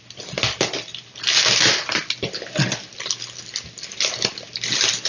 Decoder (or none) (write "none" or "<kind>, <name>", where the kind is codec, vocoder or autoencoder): none